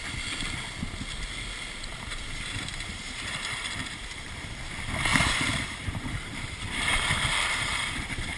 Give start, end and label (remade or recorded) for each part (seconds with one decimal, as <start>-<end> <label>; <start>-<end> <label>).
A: 0.0-1.9 recorded; 1.9-4.5 remade; 4.5-5.1 recorded; 5.1-8.4 remade